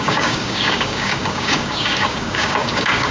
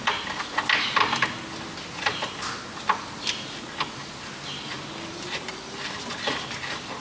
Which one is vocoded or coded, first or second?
first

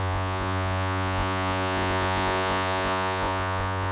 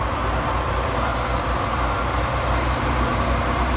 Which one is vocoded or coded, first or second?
first